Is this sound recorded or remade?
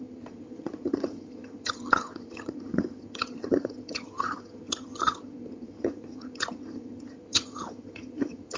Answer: remade